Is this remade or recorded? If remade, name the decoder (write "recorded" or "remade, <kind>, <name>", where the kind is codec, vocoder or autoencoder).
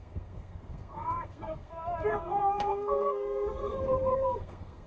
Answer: remade, codec, SNAC